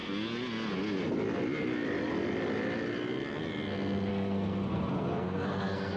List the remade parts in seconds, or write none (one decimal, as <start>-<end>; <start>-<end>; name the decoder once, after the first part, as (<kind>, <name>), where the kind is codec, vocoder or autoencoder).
4.1-6.0 (codec, SNAC)